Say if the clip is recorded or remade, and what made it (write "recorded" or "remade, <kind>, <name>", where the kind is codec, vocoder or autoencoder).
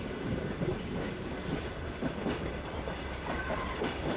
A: recorded